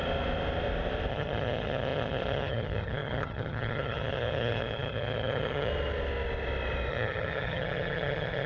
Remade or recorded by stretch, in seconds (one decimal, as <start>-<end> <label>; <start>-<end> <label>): 0.0-1.1 recorded; 1.1-5.7 remade; 5.7-6.9 recorded; 6.9-8.5 remade